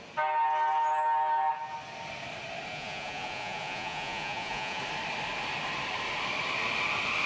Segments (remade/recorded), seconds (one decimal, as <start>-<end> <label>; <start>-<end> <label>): 0.0-2.7 recorded; 2.7-4.8 remade; 4.8-7.3 recorded